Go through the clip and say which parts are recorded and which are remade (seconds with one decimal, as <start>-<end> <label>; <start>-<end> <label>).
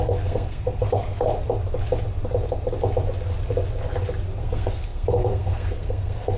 0.0-1.3 remade; 1.3-4.4 recorded; 4.4-6.4 remade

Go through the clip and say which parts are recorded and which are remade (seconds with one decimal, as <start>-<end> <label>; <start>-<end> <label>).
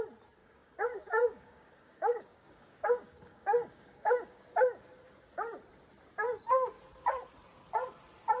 0.0-0.4 recorded; 0.4-4.4 remade; 4.4-8.4 recorded